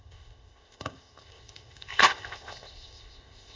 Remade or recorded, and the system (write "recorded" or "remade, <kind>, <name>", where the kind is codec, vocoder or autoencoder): remade, codec, ZipCodec